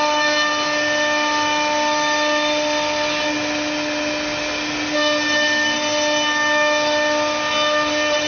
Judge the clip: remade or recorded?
recorded